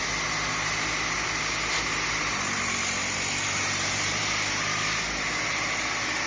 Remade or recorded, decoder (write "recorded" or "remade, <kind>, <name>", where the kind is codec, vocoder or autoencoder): recorded